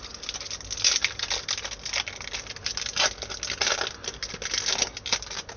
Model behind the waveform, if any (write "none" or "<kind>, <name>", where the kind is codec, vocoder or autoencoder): none